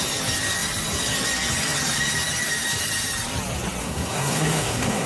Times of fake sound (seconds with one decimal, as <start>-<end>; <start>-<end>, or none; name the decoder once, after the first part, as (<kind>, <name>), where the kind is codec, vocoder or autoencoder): 3.8-5.1 (codec, SNAC)